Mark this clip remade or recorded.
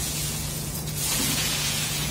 remade